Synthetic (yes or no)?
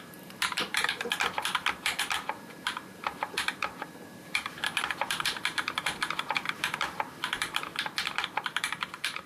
yes